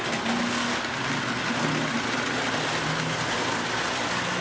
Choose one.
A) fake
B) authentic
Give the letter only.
B